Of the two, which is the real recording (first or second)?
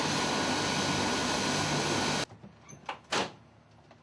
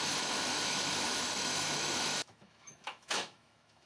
first